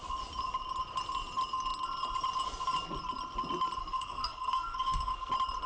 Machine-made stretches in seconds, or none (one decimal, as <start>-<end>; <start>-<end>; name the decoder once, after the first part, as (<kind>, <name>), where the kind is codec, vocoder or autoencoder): 3.8-5.3 (codec, SNAC)